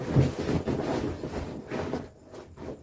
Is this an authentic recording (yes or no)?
yes